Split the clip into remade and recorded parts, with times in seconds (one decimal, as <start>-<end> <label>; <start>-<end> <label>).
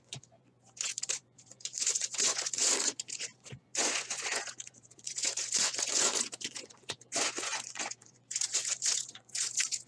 0.0-9.9 remade